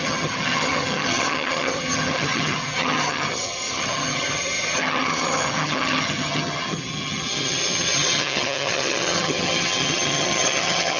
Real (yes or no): no